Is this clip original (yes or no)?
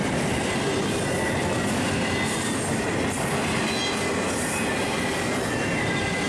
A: yes